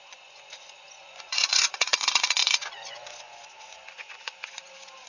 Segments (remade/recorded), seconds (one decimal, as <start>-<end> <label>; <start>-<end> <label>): 0.0-5.1 remade